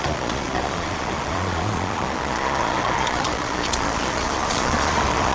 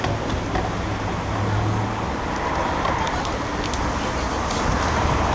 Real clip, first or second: second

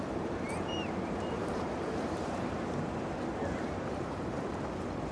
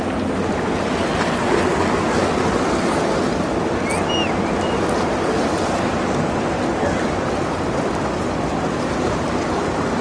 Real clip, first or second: second